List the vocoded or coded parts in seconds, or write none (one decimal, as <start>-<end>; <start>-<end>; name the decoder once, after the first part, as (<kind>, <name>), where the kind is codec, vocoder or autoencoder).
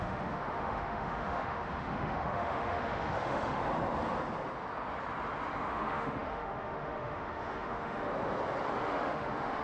0.0-3.6 (autoencoder, DAC-VAE); 5.7-8.1; 8.8-9.6